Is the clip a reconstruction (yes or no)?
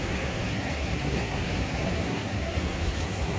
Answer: yes